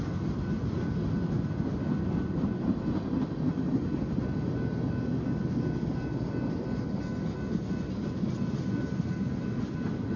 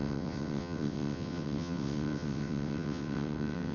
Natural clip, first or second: first